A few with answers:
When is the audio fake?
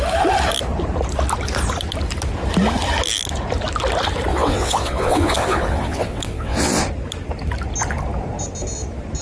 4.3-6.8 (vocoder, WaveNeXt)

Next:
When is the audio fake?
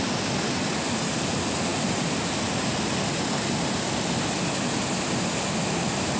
none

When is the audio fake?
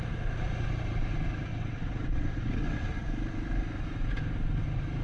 1.5-2.9 (vocoder, WaveNeXt)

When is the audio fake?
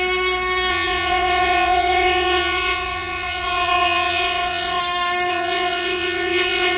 0.7-4.8 (vocoder, WaveNeXt); 5.3-6.8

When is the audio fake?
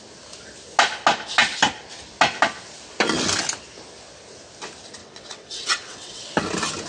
5.0-6.2 (vocoder, WaveNeXt)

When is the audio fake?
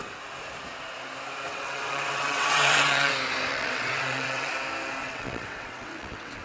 1.5-3.1 (vocoder, WaveNeXt); 3.5-4.5; 5.0-6.4